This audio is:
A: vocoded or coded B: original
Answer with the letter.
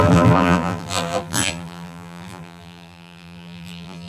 A